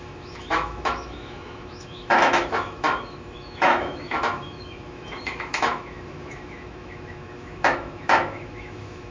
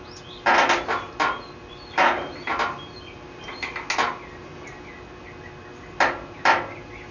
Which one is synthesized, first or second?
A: first